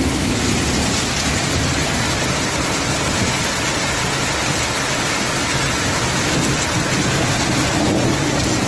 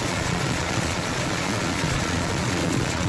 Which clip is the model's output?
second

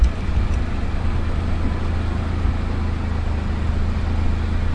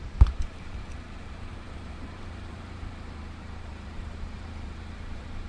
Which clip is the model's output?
second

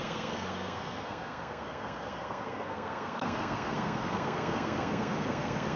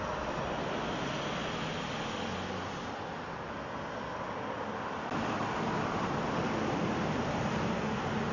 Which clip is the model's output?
first